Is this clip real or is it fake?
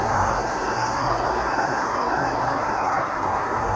fake